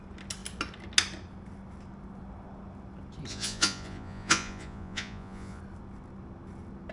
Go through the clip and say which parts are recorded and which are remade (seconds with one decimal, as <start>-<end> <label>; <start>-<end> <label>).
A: 0.0-3.3 recorded; 3.3-5.6 remade; 5.6-6.9 recorded